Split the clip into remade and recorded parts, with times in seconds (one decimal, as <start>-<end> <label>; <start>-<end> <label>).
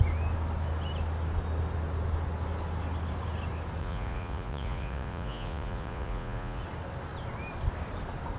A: 0.0-3.8 recorded; 3.8-6.6 remade; 6.6-8.4 recorded